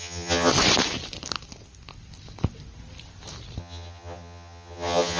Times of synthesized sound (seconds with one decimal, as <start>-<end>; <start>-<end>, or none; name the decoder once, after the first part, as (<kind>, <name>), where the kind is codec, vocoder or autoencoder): 0.0-0.5 (vocoder, HiFi-GAN); 3.6-5.2